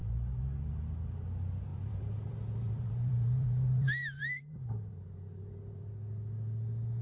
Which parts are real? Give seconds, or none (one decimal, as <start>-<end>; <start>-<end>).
0.7-1.7; 5.9-7.0